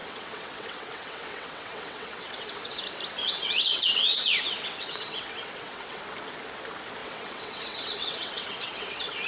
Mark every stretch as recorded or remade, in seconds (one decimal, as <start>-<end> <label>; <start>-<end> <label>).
0.0-2.8 remade; 2.8-3.2 recorded; 3.2-6.0 remade; 6.0-7.0 recorded; 7.0-9.3 remade